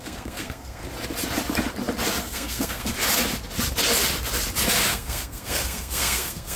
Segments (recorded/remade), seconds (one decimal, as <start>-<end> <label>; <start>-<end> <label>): 0.0-0.8 remade; 0.8-2.2 recorded; 2.2-2.9 remade; 2.9-4.9 recorded; 4.9-6.6 remade